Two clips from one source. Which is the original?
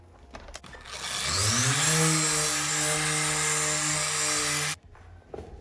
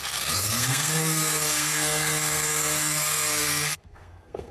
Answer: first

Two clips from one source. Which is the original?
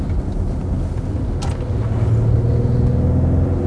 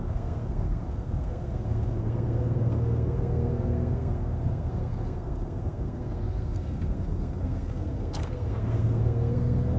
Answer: first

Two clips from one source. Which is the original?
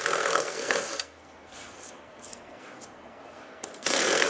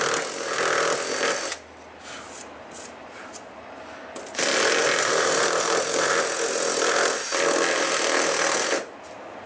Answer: second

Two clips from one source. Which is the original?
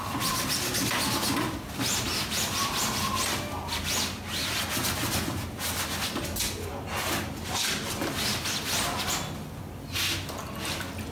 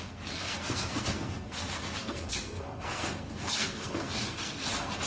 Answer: first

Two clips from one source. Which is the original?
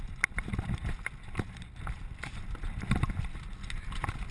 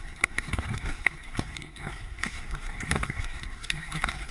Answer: first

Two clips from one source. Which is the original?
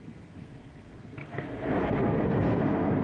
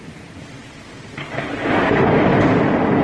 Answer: second